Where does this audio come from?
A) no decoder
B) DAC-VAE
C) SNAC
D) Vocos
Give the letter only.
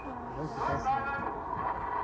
A